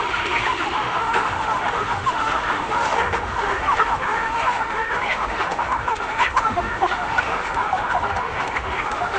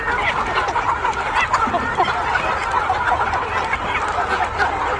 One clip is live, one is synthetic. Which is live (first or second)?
second